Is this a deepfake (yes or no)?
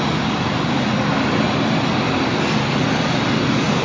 no